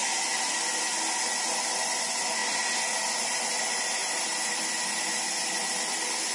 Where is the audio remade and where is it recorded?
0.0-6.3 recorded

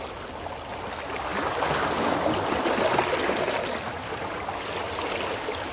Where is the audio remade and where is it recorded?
0.0-5.7 recorded

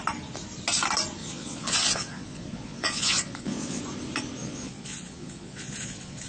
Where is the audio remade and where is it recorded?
0.0-1.2 recorded; 1.2-3.8 remade; 3.8-4.4 recorded; 4.4-6.3 remade

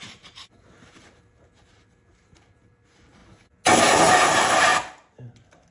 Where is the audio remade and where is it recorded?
0.0-3.2 remade; 3.2-3.8 recorded; 3.8-4.7 remade; 4.7-5.7 recorded

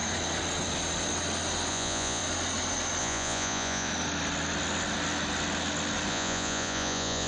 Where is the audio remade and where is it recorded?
0.0-1.7 recorded; 1.7-2.2 remade; 2.2-3.0 recorded; 3.0-3.9 remade; 3.9-6.1 recorded; 6.1-7.3 remade